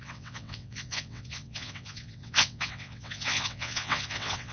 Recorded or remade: remade